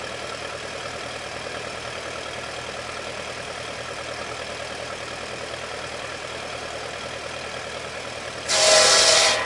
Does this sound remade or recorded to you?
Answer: recorded